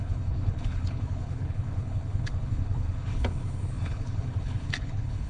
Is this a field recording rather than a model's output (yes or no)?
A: no